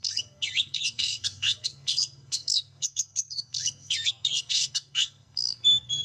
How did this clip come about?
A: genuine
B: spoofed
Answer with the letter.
B